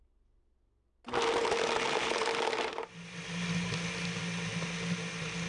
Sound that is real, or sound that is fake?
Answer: real